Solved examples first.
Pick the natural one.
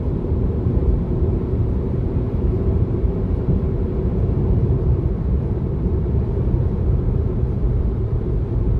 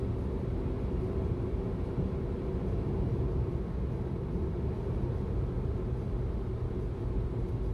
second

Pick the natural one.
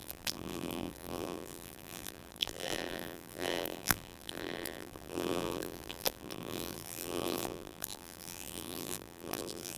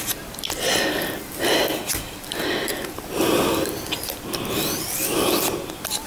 second